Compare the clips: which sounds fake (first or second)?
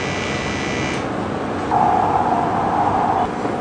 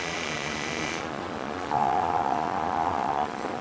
second